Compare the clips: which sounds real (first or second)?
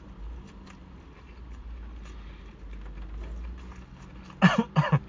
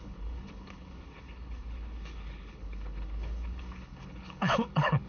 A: first